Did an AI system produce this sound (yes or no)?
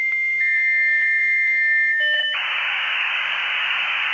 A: yes